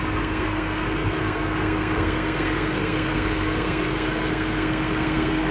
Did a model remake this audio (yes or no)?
yes